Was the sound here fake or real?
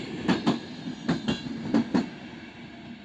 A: real